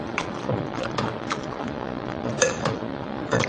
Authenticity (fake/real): fake